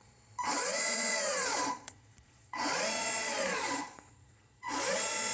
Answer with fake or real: fake